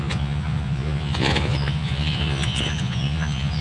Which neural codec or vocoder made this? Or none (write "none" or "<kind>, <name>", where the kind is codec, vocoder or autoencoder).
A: vocoder, Vocos